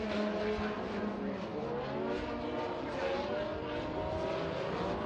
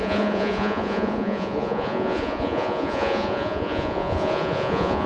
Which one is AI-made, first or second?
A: second